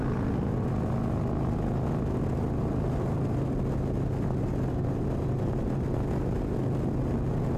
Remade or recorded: recorded